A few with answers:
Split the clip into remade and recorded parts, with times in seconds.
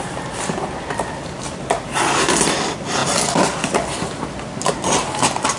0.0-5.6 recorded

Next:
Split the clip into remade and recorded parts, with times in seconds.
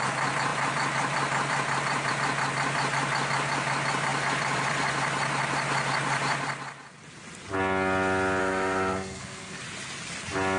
0.0-8.4 recorded; 8.4-9.6 remade; 9.6-10.6 recorded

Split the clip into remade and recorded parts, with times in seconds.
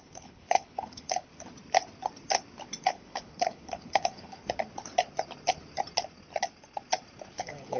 0.0-1.3 remade; 1.3-2.8 recorded; 2.8-4.4 remade; 4.4-7.3 recorded; 7.3-7.8 remade